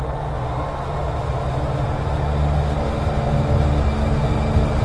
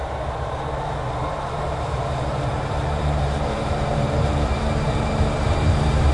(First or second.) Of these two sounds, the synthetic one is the second